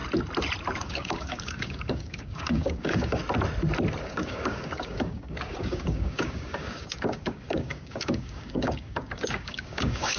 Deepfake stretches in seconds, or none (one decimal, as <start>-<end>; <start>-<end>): 0.8-3.2; 4.0-10.2